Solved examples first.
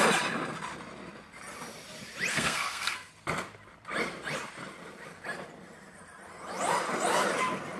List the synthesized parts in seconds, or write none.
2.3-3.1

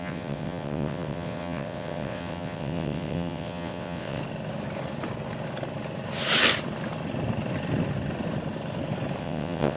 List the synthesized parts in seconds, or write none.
0.0-4.2; 9.2-9.8

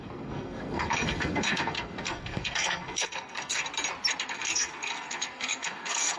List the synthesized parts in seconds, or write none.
0.0-3.6; 4.3-6.2

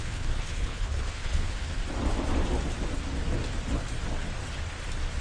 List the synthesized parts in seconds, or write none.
0.0-1.8

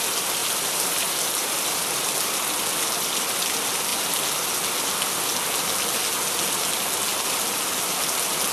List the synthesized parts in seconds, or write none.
0.4-2.0

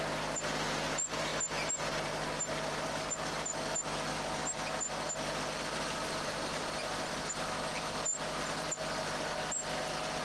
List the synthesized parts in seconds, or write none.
none

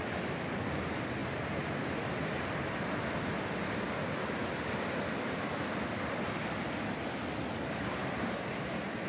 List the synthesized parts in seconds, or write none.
none